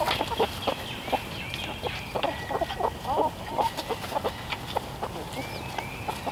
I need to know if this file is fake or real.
real